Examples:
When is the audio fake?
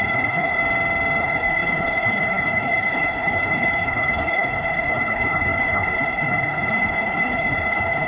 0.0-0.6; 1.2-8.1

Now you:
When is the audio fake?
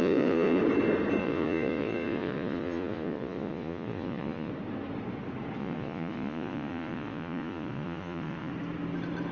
0.0-0.6; 1.2-4.5; 5.6-8.5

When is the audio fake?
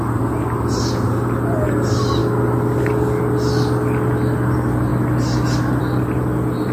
none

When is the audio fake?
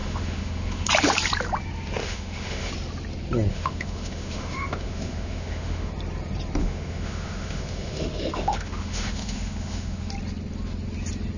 0.0-0.9; 2.0-2.7; 3.5-5.9; 6.6-10.1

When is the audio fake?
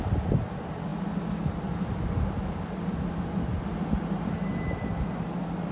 none